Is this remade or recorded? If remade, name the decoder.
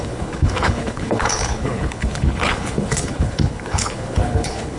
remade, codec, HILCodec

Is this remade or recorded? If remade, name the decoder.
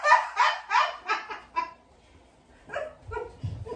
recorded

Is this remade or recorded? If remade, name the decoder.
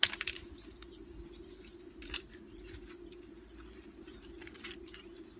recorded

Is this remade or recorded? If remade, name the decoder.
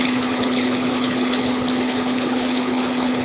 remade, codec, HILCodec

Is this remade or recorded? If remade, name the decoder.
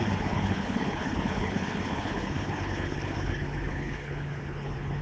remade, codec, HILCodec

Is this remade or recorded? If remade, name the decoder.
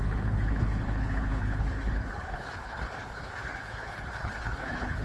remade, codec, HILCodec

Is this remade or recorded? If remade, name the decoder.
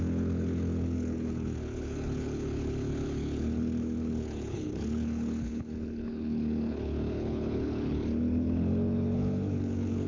remade, codec, HILCodec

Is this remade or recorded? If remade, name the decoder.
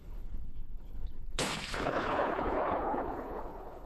remade, codec, HILCodec